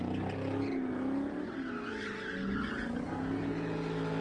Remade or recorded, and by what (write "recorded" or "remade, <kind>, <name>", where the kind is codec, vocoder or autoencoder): recorded